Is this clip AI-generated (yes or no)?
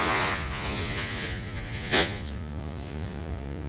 yes